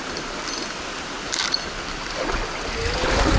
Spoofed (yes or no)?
no